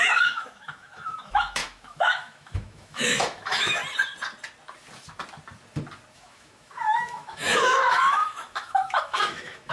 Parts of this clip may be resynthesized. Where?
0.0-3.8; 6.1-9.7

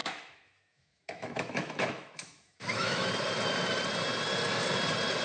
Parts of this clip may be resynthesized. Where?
0.0-3.1

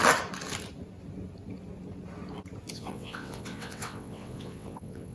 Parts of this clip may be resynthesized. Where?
2.7-5.1

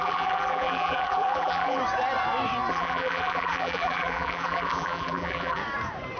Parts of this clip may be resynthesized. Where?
0.0-1.8; 2.7-5.6

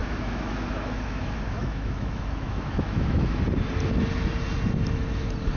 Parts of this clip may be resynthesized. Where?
0.0-3.4

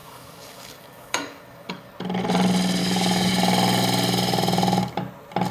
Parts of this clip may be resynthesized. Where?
0.0-1.9; 2.8-3.3

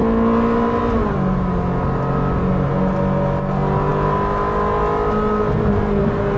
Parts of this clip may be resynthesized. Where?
none

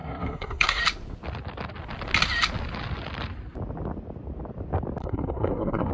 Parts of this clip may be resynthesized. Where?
0.0-0.8; 5.0-5.9